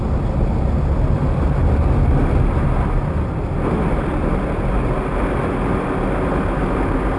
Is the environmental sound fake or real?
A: real